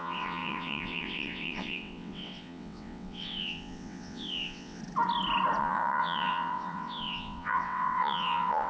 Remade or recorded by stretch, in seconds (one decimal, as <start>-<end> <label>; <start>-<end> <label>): 0.0-4.8 remade; 4.8-5.6 recorded; 5.6-8.7 remade